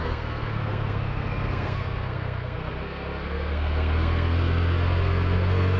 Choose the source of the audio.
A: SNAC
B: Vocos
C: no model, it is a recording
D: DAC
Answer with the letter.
A